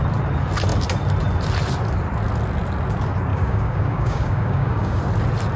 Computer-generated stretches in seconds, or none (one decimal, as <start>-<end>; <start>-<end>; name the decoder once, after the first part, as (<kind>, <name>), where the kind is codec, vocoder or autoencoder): 3.3-5.0 (codec, DAC)